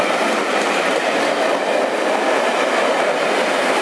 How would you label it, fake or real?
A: real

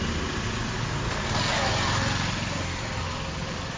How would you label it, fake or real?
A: real